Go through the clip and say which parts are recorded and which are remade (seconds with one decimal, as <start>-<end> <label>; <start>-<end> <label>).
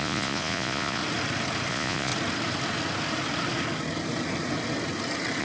0.0-1.0 remade; 1.0-1.7 recorded; 1.7-2.1 remade; 2.1-5.4 recorded